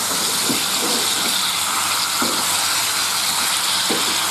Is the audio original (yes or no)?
yes